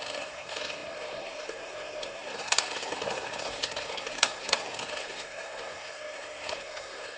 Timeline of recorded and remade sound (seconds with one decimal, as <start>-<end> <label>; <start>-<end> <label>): 0.0-7.2 remade